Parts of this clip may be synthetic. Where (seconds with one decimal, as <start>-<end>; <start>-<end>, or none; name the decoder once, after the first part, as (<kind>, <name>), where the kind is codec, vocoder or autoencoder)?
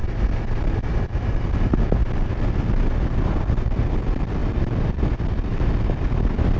none